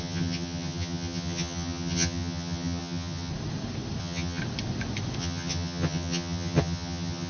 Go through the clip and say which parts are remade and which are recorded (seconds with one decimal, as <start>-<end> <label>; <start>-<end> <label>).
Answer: 0.0-3.3 remade; 3.3-4.0 recorded; 4.0-4.4 remade; 4.4-5.2 recorded; 5.2-7.3 remade